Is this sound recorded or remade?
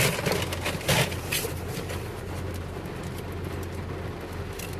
recorded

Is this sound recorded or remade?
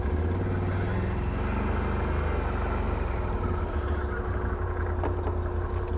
recorded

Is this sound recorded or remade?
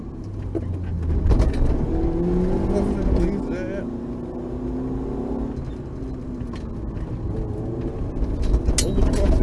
recorded